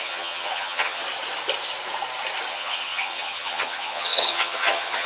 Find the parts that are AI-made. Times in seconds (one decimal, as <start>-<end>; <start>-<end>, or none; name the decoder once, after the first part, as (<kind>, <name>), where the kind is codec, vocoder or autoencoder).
0.0-1.0 (vocoder, HiFi-GAN); 2.5-5.1